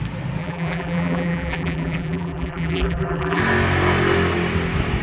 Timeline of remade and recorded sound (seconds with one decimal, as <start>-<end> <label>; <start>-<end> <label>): 0.0-0.4 recorded; 0.4-3.4 remade; 3.4-5.0 recorded